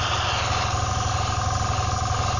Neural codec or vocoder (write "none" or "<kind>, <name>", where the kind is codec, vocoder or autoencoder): none